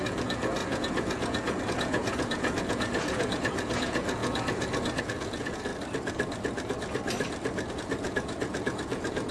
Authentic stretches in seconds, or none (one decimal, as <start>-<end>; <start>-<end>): 5.7-7.7